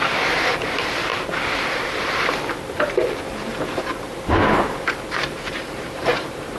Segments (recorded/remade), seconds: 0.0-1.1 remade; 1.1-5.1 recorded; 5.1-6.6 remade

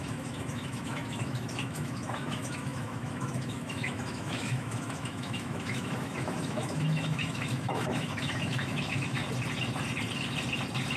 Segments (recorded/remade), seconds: 0.0-9.2 remade; 9.2-11.0 recorded

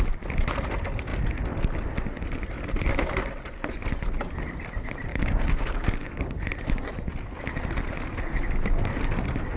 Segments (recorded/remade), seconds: 0.0-5.1 recorded; 5.1-6.1 remade; 6.1-9.6 recorded

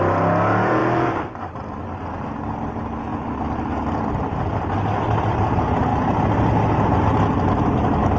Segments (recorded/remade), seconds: 0.0-8.2 recorded

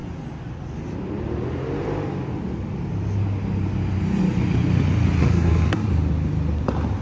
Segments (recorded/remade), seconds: 0.0-5.2 recorded; 5.2-5.9 remade; 5.9-7.0 recorded

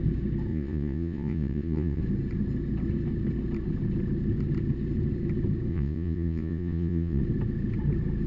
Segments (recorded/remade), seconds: 0.0-0.5 recorded; 0.5-2.0 remade; 2.0-5.7 recorded; 5.7-7.2 remade; 7.2-8.3 recorded

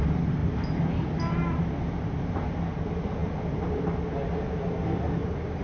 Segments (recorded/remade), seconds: 0.0-5.6 recorded